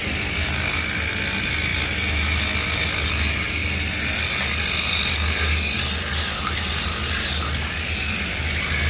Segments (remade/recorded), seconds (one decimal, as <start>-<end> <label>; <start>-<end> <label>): 0.0-8.9 recorded